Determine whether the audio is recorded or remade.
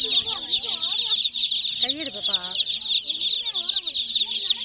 recorded